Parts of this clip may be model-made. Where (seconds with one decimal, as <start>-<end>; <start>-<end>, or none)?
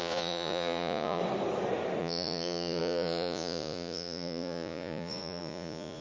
0.0-1.2; 2.0-6.0